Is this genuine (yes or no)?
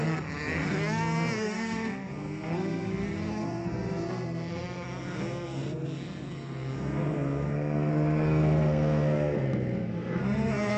no